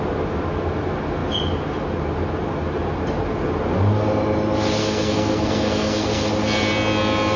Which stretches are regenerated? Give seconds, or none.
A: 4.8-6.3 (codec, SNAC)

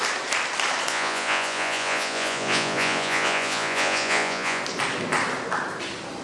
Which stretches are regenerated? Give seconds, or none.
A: 0.9-4.6 (vocoder, Vocos)

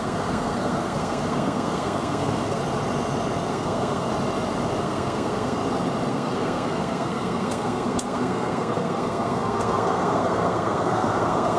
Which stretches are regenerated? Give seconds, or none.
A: 0.0-2.6 (codec, SNAC); 3.5-4.1; 4.8-5.6; 6.1-11.6

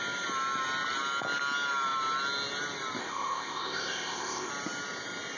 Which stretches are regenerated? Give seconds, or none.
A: 3.0-4.5 (codec, ZipCodec)

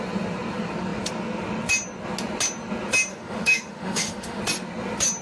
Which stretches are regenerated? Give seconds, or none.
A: 3.1-4.4 (autoencoder, DAC-VAE)

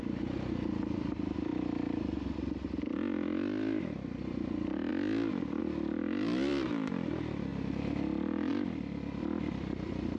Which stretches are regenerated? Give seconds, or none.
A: 0.0-4.9 (vocoder, BigVGAN v2); 5.6-10.2